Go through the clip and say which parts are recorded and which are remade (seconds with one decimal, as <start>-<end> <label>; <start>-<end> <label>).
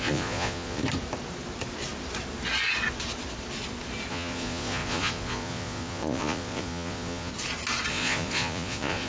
0.0-0.8 remade; 0.8-4.1 recorded; 4.1-7.3 remade; 7.3-7.9 recorded; 7.9-9.1 remade